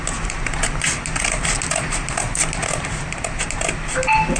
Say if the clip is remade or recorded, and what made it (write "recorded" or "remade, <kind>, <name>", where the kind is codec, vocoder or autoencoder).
recorded